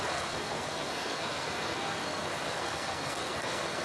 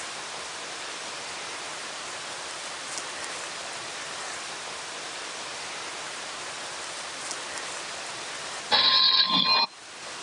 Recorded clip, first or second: second